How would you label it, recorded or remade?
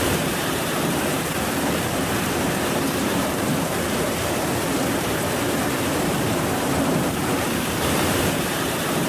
remade